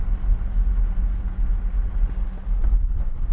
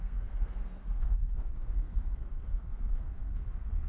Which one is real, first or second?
first